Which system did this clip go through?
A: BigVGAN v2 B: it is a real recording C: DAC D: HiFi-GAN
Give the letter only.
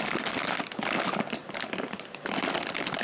B